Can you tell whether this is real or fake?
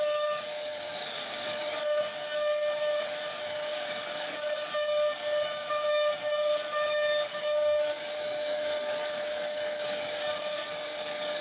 fake